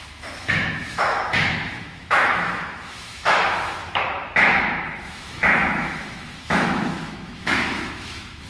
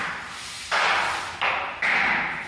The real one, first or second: second